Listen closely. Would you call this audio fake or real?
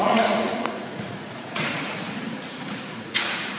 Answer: fake